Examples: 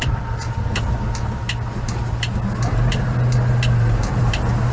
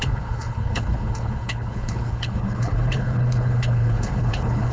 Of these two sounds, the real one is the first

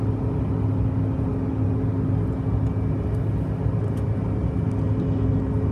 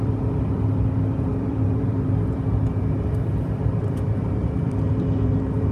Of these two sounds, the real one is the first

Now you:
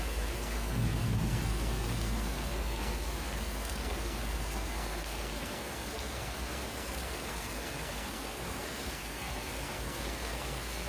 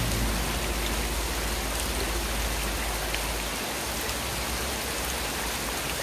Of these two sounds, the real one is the second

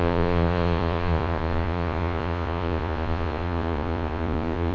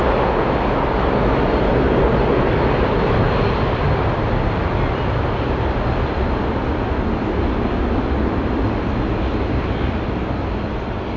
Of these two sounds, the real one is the second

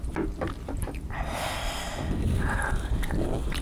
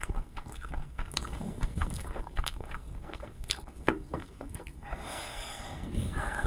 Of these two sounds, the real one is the first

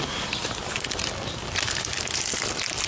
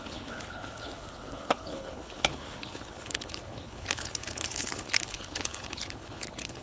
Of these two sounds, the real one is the first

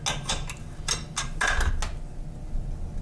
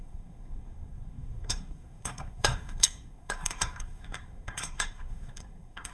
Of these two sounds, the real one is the first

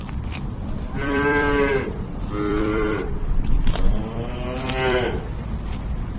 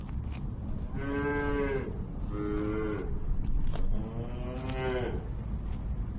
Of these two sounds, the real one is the second